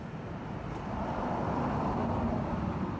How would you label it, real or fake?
real